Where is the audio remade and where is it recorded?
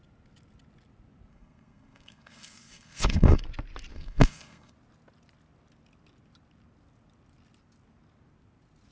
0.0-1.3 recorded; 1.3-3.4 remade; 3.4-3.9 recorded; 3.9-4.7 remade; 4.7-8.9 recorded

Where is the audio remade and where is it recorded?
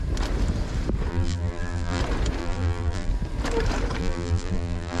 0.0-1.1 recorded; 1.1-2.0 remade; 2.0-2.4 recorded; 2.4-3.1 remade; 3.1-4.0 recorded; 4.0-5.0 remade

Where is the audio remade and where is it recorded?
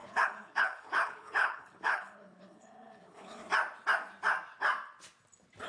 0.0-3.4 remade; 3.4-5.7 recorded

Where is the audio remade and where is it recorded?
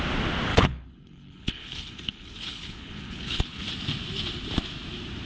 0.0-0.5 recorded; 0.5-3.7 remade; 3.7-5.3 recorded